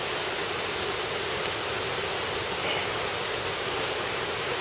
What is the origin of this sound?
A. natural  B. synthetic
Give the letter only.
A